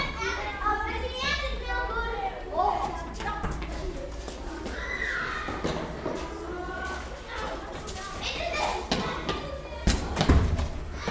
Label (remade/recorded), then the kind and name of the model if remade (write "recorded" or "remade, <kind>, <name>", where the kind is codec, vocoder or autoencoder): recorded